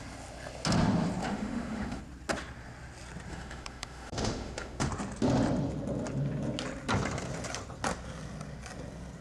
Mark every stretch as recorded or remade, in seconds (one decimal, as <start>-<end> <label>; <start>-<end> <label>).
0.0-1.2 recorded; 1.2-2.0 remade; 2.0-3.3 recorded; 3.3-4.9 remade; 4.9-9.2 recorded